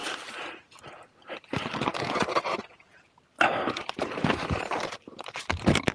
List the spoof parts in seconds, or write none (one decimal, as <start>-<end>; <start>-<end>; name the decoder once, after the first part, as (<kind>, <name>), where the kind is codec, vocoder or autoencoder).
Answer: none